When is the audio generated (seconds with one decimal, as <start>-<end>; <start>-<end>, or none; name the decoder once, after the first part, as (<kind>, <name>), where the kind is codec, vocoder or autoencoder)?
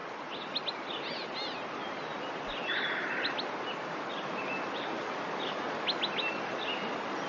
none